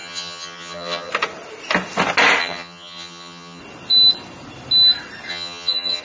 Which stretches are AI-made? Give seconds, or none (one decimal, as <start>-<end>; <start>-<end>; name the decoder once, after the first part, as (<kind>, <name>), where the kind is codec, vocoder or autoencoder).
0.0-1.1 (vocoder, HiFi-GAN); 2.4-3.6; 5.3-6.0